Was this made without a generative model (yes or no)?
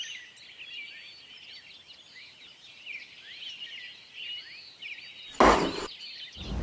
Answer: yes